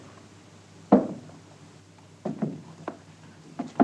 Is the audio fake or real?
real